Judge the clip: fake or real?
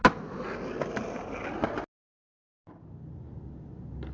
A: real